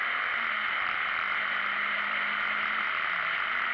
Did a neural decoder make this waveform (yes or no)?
no